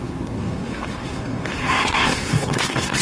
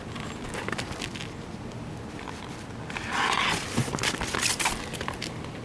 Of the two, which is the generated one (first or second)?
first